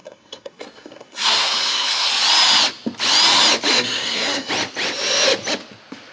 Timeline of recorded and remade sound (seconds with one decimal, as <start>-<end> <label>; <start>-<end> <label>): 0.0-2.1 remade; 2.1-3.7 recorded; 3.7-4.5 remade; 4.5-6.1 recorded